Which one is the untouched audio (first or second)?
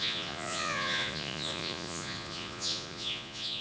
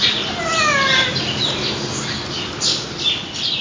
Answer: second